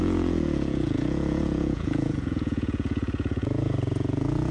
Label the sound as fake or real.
fake